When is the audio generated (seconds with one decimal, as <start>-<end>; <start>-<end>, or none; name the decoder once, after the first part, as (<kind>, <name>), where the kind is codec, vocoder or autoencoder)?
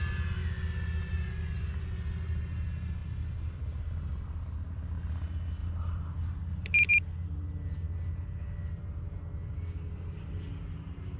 none